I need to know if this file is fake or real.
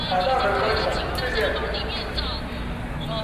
real